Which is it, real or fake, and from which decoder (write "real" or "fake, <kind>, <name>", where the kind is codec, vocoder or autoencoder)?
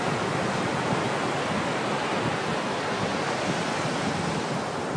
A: real